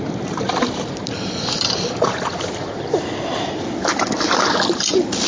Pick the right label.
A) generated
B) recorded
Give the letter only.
B